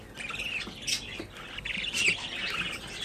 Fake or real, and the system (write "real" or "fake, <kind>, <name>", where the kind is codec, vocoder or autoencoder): real